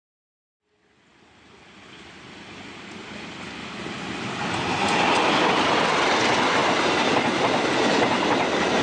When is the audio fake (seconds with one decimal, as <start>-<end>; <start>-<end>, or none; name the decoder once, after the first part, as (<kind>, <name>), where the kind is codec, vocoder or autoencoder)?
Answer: none